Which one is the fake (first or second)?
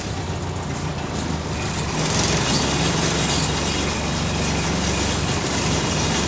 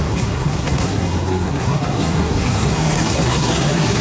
second